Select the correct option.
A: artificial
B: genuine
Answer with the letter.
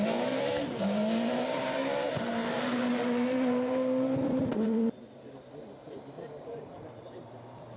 A